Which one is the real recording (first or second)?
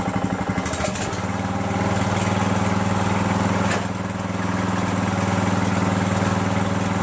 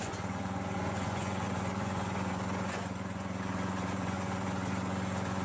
first